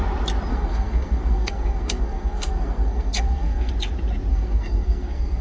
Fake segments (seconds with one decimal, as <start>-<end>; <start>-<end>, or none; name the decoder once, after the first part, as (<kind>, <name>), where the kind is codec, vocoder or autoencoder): 0.5-3.7 (codec, SNAC); 4.3-5.4